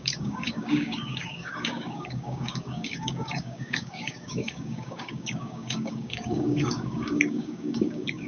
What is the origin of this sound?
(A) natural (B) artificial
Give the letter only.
B